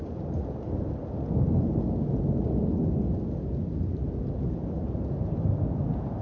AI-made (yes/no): no